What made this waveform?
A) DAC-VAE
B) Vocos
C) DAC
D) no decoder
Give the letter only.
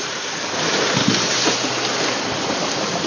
D